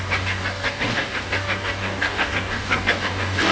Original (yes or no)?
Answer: no